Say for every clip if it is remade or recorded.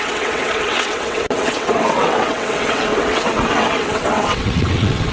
remade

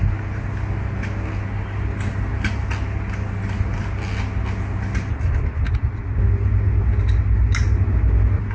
recorded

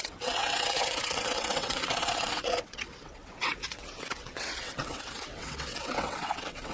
remade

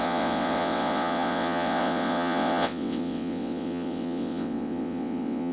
remade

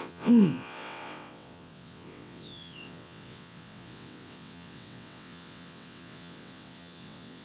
remade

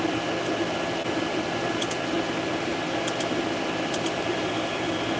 recorded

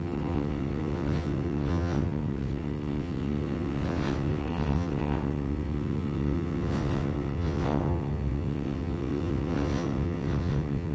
remade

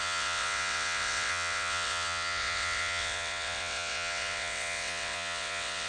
remade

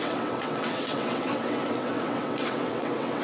remade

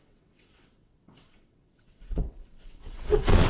remade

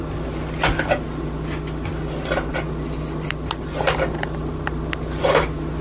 recorded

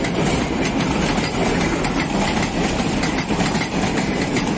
recorded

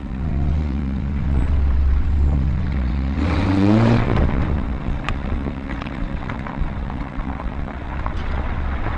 remade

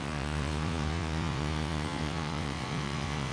remade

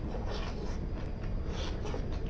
recorded